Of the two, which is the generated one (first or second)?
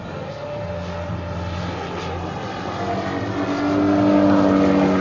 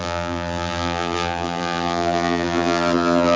second